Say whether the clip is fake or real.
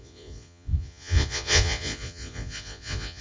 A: fake